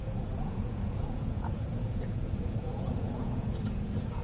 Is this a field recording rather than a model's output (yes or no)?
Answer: no